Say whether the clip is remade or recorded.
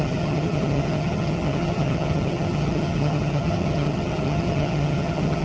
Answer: remade